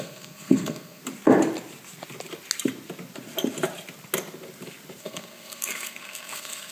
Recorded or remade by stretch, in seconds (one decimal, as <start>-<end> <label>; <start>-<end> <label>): 0.0-1.0 remade; 1.0-5.0 recorded; 5.0-6.7 remade